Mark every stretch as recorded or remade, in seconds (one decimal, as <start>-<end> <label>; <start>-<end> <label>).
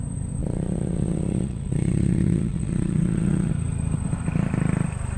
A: 0.0-0.4 recorded; 0.4-3.5 remade; 3.5-5.2 recorded